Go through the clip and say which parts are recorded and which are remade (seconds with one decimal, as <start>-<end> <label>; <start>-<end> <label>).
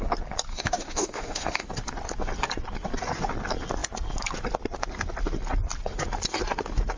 0.0-0.5 recorded; 0.5-1.7 remade; 1.7-7.0 recorded